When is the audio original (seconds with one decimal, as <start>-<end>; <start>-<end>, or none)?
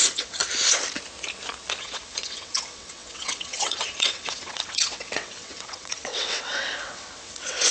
0.4-1.8